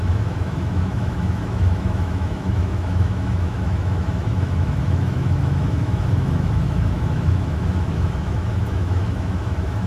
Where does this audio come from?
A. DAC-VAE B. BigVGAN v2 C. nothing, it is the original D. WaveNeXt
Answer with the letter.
A